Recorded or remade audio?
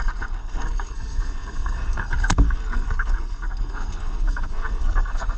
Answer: remade